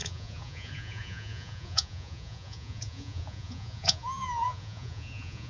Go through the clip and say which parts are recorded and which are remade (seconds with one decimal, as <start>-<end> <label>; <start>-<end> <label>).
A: 0.0-5.5 remade